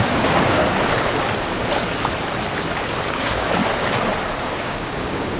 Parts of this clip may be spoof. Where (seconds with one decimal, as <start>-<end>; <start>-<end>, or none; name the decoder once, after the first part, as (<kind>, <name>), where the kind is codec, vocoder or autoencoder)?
0.0-0.6 (codec, DAC); 3.1-3.6; 4.4-5.4